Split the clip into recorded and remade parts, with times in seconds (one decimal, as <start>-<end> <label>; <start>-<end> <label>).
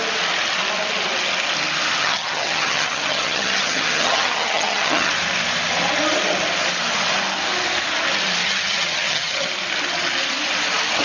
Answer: 0.0-2.0 recorded; 2.0-5.1 remade; 5.1-8.4 recorded; 8.4-9.5 remade; 9.5-11.0 recorded